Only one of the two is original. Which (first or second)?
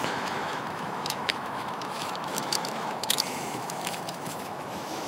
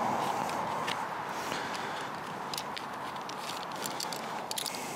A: second